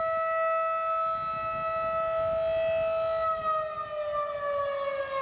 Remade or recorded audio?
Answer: recorded